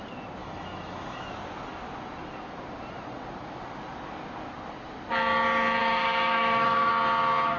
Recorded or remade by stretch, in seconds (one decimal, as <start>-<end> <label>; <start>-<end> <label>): 0.0-0.4 recorded; 0.4-1.2 remade; 1.2-5.8 recorded; 5.8-6.9 remade; 6.9-7.6 recorded